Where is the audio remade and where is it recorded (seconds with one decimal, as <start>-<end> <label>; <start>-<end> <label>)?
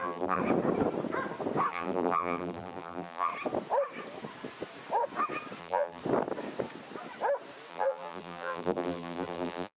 0.0-0.4 remade; 0.4-1.7 recorded; 1.7-3.3 remade; 3.3-5.6 recorded; 5.6-6.0 remade; 6.0-7.7 recorded; 7.7-9.8 remade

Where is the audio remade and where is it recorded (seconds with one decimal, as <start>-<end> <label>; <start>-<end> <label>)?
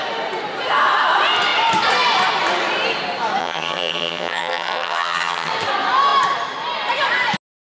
0.0-3.4 recorded; 3.4-5.5 remade; 5.5-7.6 recorded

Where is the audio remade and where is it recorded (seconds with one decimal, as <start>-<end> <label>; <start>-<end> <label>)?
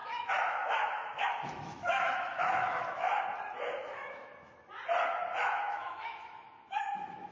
0.0-3.2 remade; 3.2-3.8 recorded; 3.8-4.6 remade; 4.6-5.4 recorded; 5.4-7.3 remade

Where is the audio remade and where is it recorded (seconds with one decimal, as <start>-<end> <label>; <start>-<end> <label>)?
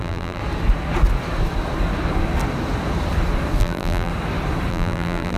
0.0-0.4 remade; 0.4-3.6 recorded; 3.6-4.1 remade; 4.1-4.7 recorded; 4.7-5.4 remade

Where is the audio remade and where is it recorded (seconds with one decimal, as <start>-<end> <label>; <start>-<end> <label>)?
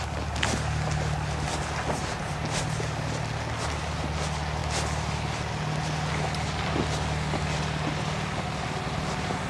0.0-9.5 recorded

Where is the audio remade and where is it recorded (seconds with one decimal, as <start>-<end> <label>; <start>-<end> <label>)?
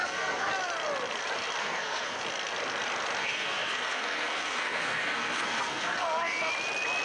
0.0-0.5 remade; 0.5-1.6 recorded; 1.6-2.2 remade; 2.2-3.2 recorded; 3.2-6.5 remade; 6.5-7.0 recorded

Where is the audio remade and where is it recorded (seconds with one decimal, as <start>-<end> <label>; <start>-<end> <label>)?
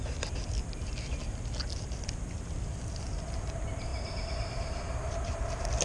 0.0-5.8 recorded